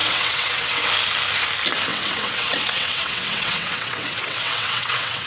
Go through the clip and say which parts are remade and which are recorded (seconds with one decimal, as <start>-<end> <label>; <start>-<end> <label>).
0.0-0.8 remade; 0.8-1.9 recorded; 1.9-5.3 remade